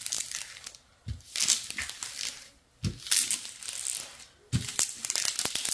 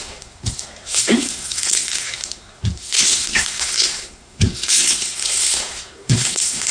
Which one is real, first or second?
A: first